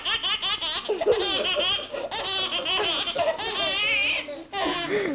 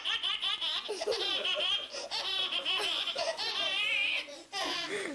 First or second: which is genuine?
first